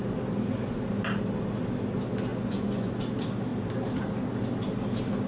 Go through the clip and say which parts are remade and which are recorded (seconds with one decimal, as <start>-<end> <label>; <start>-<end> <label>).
0.0-2.3 recorded; 2.3-2.9 remade; 2.9-5.3 recorded